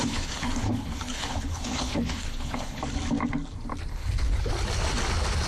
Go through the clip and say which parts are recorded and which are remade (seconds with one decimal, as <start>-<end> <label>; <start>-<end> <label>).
0.0-2.8 remade; 2.8-3.9 recorded; 3.9-4.5 remade; 4.5-5.5 recorded